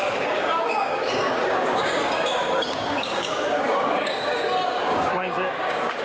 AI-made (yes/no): yes